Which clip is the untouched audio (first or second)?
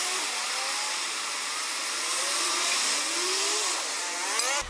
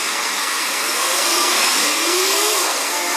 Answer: first